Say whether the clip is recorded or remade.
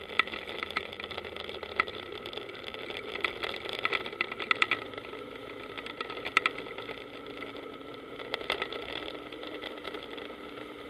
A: recorded